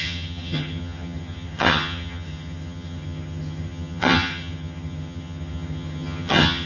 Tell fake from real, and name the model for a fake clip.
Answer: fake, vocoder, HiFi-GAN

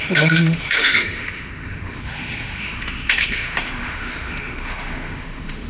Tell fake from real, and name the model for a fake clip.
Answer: fake, autoencoder, DAC-VAE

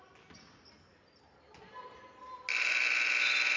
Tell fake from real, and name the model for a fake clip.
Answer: real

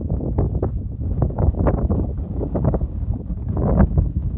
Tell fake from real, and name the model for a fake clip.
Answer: fake, codec, DAC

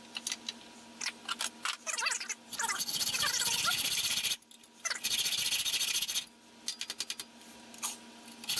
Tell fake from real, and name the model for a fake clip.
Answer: real